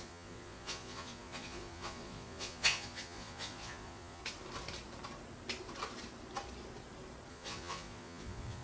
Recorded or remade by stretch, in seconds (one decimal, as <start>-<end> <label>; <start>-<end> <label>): 0.0-4.2 remade; 4.2-7.3 recorded; 7.3-8.6 remade